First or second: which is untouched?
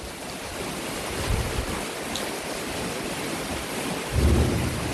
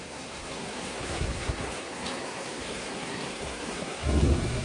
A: first